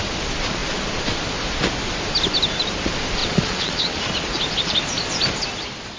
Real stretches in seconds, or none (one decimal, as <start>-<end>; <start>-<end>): 0.0-3.2; 4.0-6.0